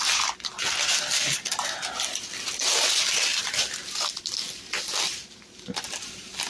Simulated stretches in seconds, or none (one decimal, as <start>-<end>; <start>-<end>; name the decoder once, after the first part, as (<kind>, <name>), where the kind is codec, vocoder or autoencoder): none